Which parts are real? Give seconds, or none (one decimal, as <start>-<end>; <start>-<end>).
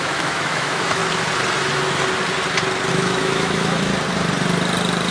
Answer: 1.0-2.9; 3.9-5.1